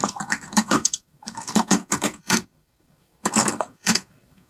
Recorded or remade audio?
remade